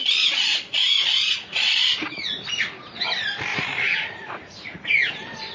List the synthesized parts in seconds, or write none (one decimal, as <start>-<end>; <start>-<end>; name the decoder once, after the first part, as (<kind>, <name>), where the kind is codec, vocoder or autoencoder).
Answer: 0.5-1.8 (vocoder, Vocos); 3.5-5.1